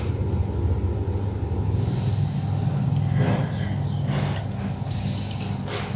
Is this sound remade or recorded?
recorded